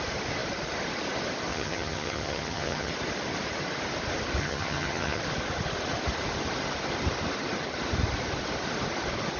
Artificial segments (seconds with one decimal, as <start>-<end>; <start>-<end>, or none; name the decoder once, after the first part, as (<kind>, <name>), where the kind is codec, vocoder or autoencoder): 1.5-2.9 (vocoder, HiFi-GAN); 4.4-5.2

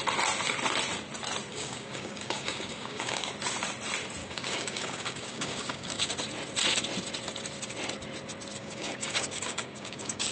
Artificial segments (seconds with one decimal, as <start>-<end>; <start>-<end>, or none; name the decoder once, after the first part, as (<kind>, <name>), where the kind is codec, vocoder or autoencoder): 1.5-3.3 (codec, DAC); 4.2-6.1; 8.6-10.3

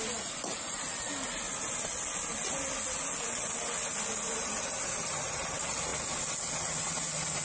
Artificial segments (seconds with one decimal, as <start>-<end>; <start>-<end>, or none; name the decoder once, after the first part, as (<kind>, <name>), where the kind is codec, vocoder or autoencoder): none